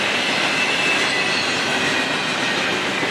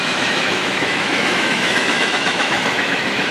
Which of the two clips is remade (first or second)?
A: second